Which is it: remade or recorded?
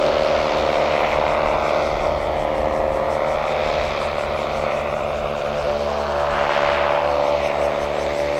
recorded